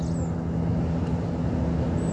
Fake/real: real